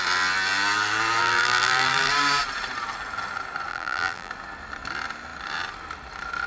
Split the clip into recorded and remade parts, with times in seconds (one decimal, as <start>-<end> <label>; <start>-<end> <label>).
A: 0.0-1.2 recorded; 1.2-2.1 remade; 2.1-3.7 recorded; 3.7-4.3 remade; 4.3-6.5 recorded